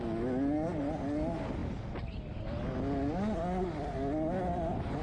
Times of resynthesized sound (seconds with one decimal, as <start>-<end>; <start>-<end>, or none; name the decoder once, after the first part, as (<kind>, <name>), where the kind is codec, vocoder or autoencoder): none